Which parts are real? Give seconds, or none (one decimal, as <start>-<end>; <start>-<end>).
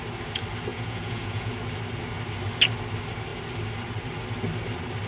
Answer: 0.0-0.7; 1.6-5.1